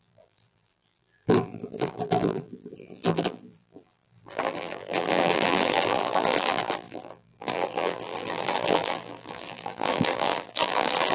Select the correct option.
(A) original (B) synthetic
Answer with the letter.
B